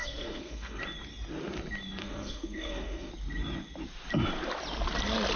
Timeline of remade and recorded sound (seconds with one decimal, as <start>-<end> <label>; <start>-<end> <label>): 0.0-0.8 remade; 0.8-2.0 recorded; 2.0-3.1 remade; 3.1-5.4 recorded